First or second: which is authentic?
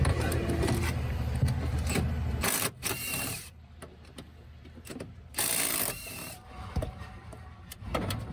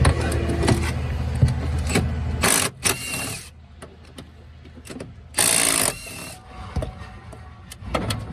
second